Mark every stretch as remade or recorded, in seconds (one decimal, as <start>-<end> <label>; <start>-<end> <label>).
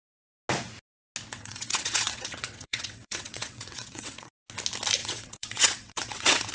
0.0-1.3 recorded; 1.3-4.3 remade; 4.3-5.0 recorded; 5.0-6.5 remade